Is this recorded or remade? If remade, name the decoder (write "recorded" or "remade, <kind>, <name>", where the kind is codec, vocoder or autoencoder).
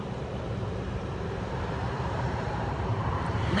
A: remade, vocoder, BigVGAN v2